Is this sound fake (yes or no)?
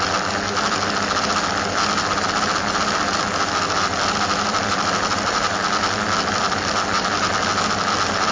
no